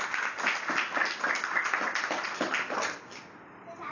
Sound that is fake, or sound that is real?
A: real